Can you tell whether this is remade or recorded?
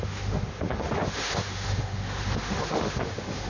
remade